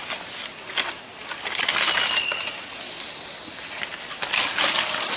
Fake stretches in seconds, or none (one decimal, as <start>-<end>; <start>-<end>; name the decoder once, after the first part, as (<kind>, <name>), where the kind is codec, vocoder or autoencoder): none